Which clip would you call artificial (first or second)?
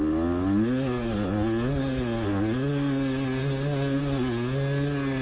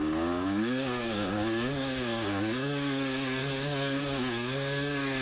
second